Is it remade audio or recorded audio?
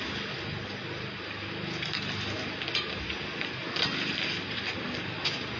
recorded